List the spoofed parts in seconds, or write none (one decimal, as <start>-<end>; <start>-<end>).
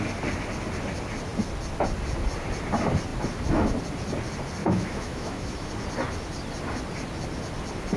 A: 4.6-5.7